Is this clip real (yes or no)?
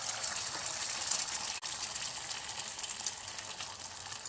yes